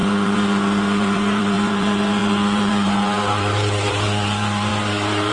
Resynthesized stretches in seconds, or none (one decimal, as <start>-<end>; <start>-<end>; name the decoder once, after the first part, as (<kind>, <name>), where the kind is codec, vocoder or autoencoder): 0.0-5.3 (vocoder, BigVGAN v2)